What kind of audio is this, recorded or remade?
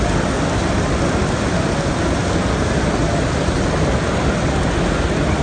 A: recorded